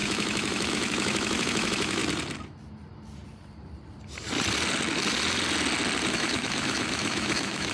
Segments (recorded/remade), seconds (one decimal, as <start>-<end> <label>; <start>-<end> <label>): 0.0-2.0 remade; 2.0-6.1 recorded; 6.1-7.7 remade